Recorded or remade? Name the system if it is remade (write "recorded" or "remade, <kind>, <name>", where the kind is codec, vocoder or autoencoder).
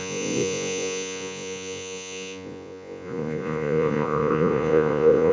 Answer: remade, vocoder, Vocos